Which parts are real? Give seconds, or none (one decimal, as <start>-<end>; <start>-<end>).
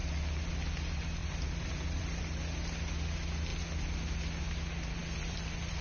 0.5-1.2; 2.2-5.0